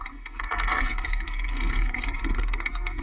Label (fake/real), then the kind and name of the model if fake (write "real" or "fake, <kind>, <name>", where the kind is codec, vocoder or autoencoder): fake, codec, SNAC